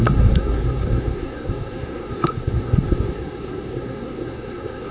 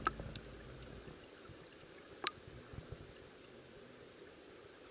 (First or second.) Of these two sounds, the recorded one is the second